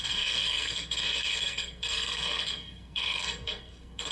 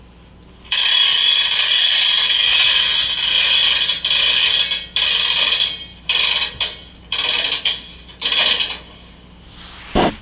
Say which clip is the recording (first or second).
second